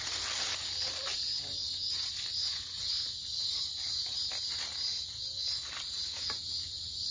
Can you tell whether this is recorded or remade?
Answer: recorded